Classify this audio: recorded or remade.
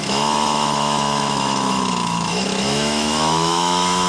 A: remade